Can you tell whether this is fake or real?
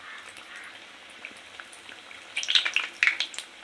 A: real